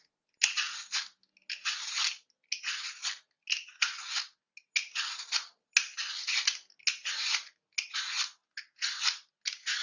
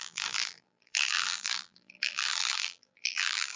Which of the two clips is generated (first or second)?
second